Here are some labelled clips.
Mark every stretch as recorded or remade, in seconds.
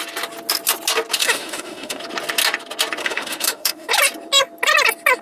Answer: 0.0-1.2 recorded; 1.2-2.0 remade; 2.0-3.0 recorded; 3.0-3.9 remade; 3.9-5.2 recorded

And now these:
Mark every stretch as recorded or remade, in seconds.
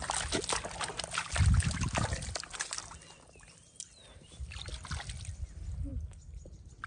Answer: 0.0-6.9 recorded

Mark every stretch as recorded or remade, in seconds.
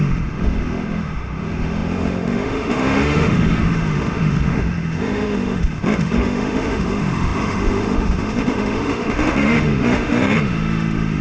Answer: 0.0-11.2 remade